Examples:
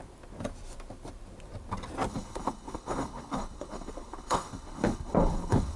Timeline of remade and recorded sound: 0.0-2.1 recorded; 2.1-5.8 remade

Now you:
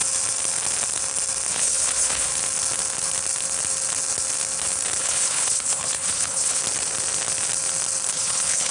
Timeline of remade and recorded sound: 0.0-1.5 recorded; 1.5-2.3 remade; 2.3-5.0 recorded; 5.0-6.6 remade; 6.6-8.1 recorded; 8.1-8.7 remade